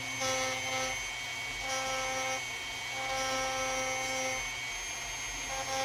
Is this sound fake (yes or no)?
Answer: no